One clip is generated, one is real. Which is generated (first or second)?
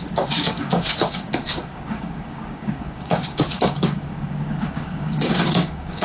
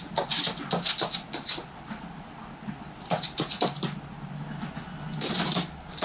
first